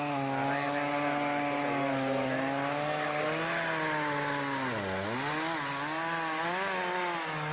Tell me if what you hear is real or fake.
real